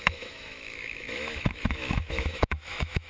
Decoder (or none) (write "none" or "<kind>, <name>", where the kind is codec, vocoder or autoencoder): autoencoder, DAC-VAE